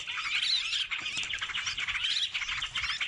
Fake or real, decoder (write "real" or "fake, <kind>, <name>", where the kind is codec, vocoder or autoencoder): real